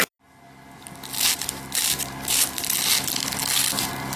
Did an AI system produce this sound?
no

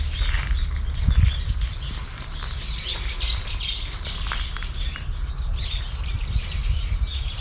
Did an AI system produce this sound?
no